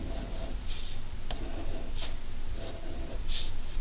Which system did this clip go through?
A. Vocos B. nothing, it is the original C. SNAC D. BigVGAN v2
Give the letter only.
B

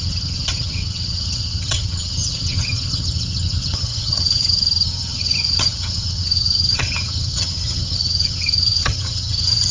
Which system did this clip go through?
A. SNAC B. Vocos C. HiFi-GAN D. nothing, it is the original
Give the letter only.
C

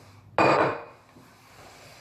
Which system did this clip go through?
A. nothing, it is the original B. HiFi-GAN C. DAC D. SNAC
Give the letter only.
A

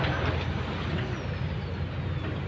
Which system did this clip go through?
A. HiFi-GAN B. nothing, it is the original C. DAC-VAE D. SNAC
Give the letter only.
B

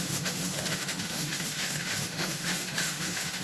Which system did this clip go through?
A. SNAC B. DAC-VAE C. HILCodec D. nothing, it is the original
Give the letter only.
B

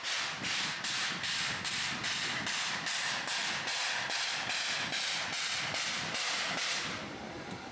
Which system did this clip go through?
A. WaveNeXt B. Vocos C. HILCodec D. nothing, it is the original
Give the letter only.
D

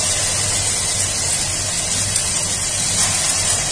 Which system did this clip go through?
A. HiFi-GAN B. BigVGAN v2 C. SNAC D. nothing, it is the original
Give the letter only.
D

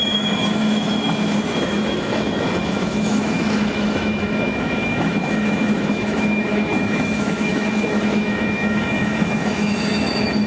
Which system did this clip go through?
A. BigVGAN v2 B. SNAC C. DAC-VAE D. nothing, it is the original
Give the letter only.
C